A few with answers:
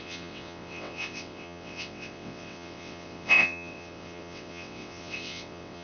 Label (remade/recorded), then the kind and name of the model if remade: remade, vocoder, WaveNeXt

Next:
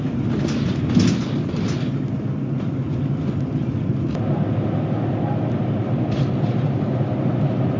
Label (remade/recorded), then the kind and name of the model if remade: recorded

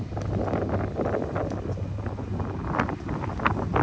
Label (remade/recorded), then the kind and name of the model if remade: recorded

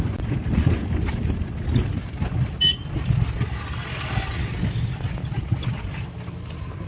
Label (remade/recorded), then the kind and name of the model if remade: recorded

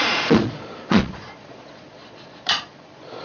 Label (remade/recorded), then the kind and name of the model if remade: remade, vocoder, Vocos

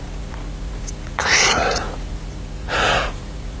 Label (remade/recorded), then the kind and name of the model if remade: remade, vocoder, Vocos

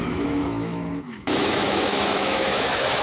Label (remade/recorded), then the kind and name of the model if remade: remade, autoencoder, DAC-VAE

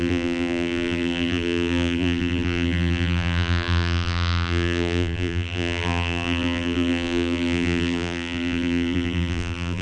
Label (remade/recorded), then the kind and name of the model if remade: remade, vocoder, BigVGAN v2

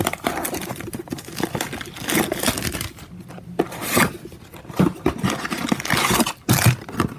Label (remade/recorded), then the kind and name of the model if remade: recorded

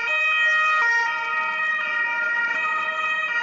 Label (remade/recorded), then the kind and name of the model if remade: recorded